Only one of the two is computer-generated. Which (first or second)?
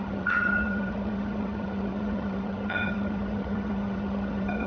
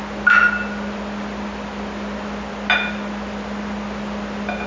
first